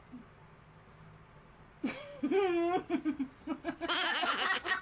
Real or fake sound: real